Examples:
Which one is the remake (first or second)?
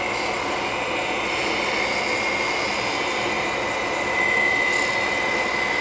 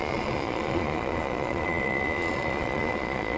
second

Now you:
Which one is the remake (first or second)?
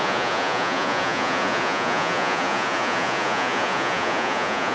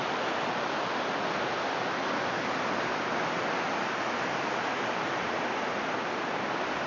first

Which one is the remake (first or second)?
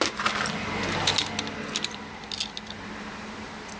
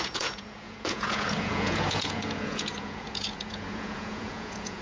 second